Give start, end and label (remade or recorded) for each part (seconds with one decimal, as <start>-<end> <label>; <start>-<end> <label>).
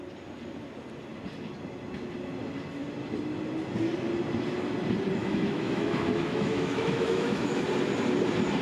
0.0-5.2 recorded; 5.2-7.6 remade; 7.6-8.6 recorded